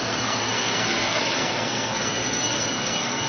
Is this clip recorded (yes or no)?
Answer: no